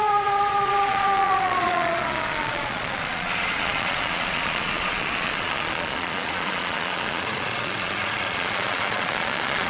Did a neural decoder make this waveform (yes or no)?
yes